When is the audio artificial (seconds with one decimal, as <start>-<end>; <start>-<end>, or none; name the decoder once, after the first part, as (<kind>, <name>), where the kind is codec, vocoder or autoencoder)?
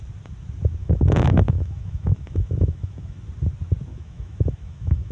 0.8-3.2 (autoencoder, DAC-VAE); 3.9-5.1